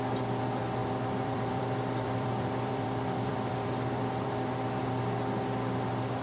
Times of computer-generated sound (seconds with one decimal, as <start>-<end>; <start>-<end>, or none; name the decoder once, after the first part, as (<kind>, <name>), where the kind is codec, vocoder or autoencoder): 0.8-4.5 (vocoder, BigVGAN v2)